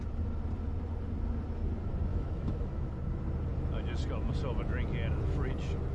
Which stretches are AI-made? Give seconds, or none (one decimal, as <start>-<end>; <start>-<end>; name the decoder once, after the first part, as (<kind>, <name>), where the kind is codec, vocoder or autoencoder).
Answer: 2.1-2.9 (autoencoder, DAC-VAE)